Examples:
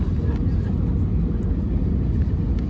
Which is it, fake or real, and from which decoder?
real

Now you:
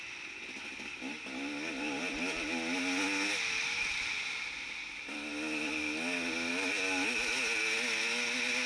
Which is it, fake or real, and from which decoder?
real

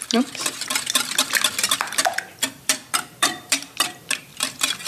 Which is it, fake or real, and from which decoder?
fake, vocoder, BigVGAN v2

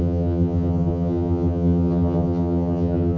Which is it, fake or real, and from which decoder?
fake, vocoder, HiFi-GAN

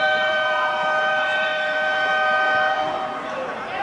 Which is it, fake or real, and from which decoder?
fake, vocoder, BigVGAN v2